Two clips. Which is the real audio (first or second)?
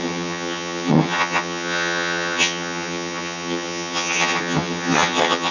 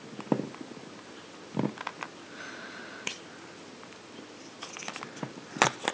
second